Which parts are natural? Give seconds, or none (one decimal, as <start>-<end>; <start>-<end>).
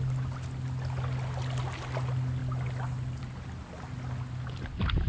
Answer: 0.0-5.1